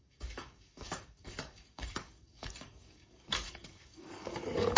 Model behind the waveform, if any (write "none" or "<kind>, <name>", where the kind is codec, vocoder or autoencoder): codec, DAC